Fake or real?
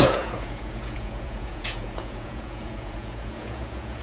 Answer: fake